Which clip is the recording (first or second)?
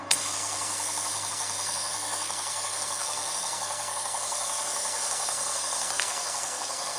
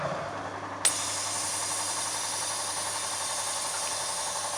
second